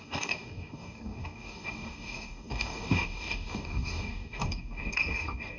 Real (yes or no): no